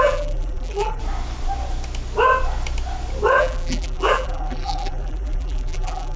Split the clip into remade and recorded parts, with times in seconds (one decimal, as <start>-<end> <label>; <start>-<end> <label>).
0.0-1.0 remade; 1.0-3.4 recorded; 3.4-6.2 remade